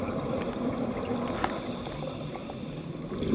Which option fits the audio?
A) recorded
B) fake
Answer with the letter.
A